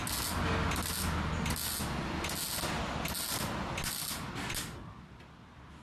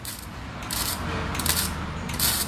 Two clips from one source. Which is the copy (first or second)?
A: second